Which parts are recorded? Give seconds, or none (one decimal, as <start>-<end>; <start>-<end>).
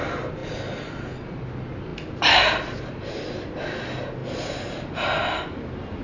0.0-6.0